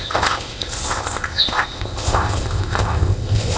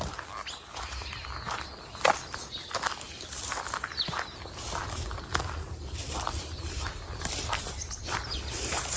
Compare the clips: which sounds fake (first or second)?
first